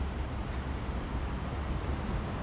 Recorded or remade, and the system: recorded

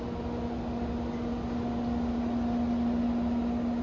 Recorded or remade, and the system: recorded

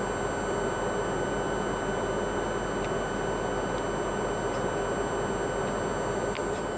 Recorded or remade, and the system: recorded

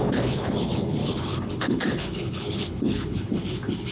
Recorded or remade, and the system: remade, codec, HILCodec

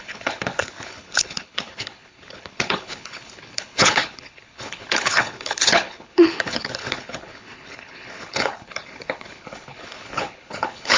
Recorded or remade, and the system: remade, codec, HILCodec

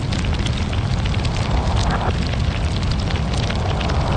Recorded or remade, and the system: recorded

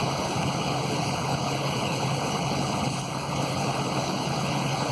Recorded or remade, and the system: remade, codec, HILCodec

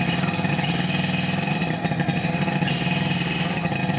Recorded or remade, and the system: recorded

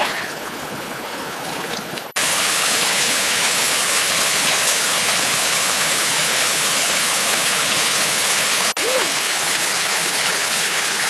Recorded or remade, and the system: remade, codec, HILCodec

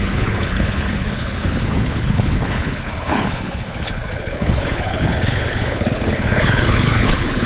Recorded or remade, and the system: remade, codec, HILCodec